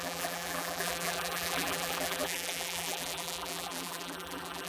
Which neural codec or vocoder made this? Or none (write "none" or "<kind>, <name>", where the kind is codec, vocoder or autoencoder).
vocoder, BigVGAN v2